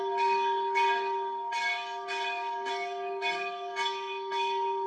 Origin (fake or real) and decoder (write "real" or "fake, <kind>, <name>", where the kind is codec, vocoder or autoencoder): fake, codec, DAC